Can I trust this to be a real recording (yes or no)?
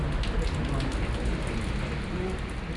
yes